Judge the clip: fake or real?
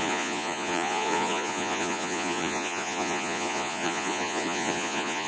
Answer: fake